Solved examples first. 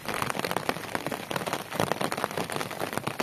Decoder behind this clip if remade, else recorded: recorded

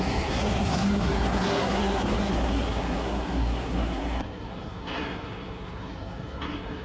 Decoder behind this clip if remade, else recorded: remade, codec, SNAC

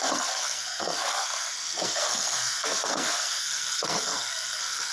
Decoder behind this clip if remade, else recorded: remade, codec, SNAC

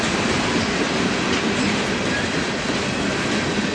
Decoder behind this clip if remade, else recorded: recorded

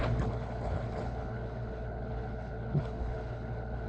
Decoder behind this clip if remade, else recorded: remade, codec, HILCodec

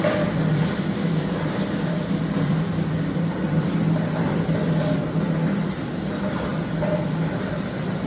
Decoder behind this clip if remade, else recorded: remade, vocoder, BigVGAN v2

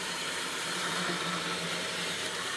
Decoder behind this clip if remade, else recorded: remade, vocoder, BigVGAN v2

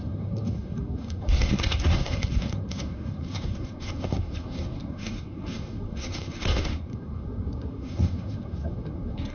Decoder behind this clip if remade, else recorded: remade, codec, SNAC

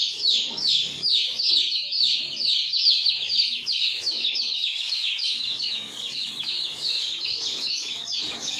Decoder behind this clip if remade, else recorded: remade, codec, DAC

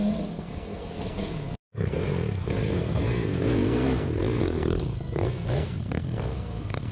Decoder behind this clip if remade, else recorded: remade, codec, SNAC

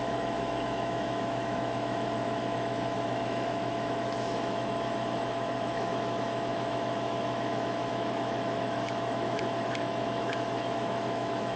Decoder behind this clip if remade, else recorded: remade, autoencoder, DAC-VAE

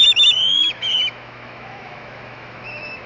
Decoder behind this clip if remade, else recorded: remade, autoencoder, DAC-VAE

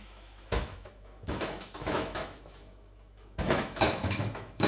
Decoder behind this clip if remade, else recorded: remade, autoencoder, DAC-VAE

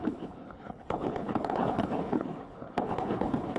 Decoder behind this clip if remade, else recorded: remade, codec, HILCodec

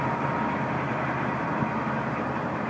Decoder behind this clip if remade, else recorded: remade, vocoder, BigVGAN v2